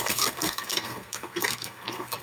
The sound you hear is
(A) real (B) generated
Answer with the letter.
B